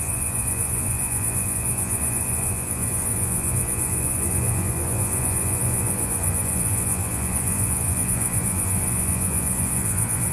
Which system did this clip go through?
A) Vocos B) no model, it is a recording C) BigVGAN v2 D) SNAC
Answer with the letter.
A